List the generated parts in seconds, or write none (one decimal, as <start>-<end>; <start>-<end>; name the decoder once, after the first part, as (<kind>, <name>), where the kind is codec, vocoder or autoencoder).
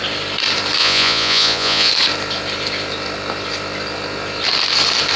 0.8-1.9 (vocoder, Vocos)